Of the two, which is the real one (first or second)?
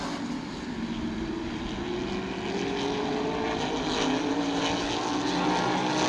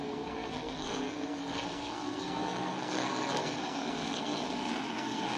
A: first